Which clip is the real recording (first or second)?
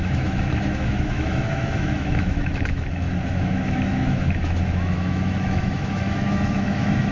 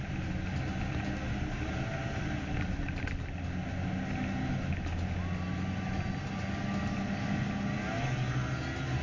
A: second